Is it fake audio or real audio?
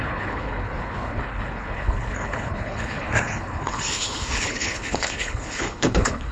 fake